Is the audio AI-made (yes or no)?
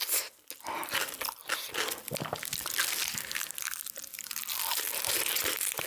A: no